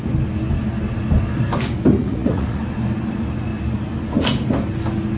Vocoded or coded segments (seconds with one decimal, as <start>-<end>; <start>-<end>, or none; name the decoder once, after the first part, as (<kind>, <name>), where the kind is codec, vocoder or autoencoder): 2.0-2.6 (vocoder, Vocos)